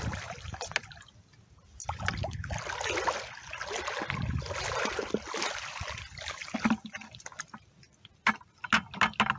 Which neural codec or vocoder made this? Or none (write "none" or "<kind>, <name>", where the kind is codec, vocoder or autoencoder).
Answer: none